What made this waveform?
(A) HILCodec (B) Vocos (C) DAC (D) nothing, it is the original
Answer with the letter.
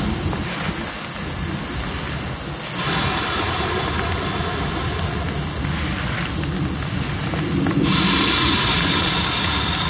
D